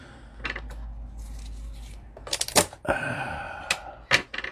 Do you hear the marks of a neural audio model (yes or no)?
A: no